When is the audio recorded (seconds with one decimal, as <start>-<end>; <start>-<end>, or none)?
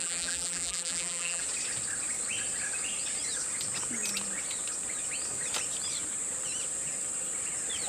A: 1.4-7.9